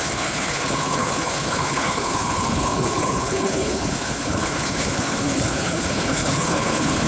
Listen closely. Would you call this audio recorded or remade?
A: remade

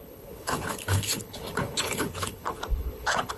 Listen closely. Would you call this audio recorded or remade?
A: remade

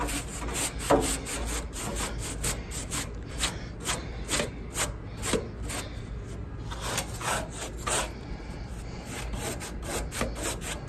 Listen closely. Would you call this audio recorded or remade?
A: recorded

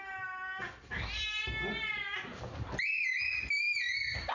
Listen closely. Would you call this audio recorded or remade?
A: recorded